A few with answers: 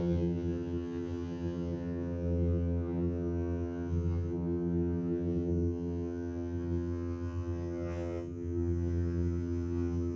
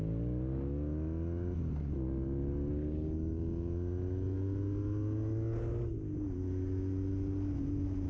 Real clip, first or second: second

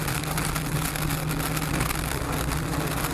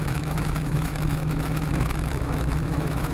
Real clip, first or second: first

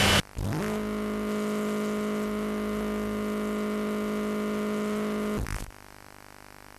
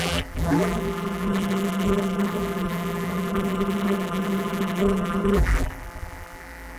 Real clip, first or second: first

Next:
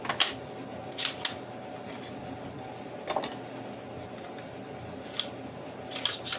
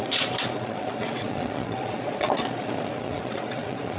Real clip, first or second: first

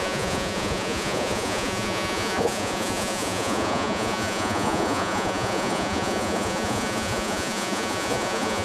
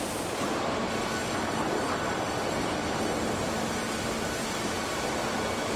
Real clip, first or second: second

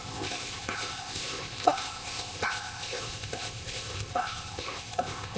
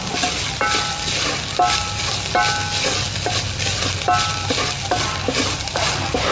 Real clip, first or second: second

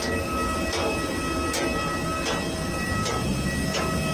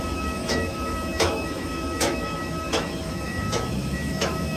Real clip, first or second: first